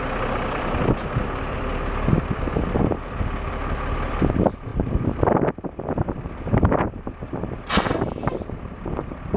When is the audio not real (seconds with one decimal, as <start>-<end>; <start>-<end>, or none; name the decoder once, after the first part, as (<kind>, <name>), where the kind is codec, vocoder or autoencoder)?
0.0-4.7 (vocoder, BigVGAN v2)